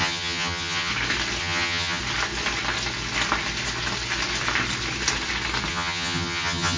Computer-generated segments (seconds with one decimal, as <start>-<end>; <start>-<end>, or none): 0.0-0.9; 1.4-2.0; 5.7-6.8